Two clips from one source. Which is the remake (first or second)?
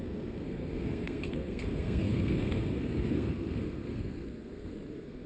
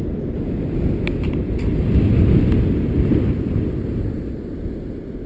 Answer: first